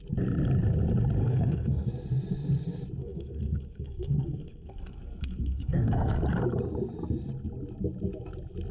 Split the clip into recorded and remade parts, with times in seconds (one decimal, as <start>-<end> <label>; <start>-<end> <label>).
0.0-1.2 recorded; 1.2-1.9 remade; 1.9-3.0 recorded; 3.0-6.2 remade; 6.2-8.7 recorded